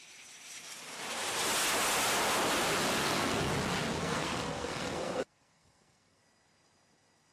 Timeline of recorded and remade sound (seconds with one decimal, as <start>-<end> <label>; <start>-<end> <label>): 0.0-3.0 recorded; 3.0-3.5 remade; 3.5-4.0 recorded; 4.0-6.2 remade; 6.2-7.3 recorded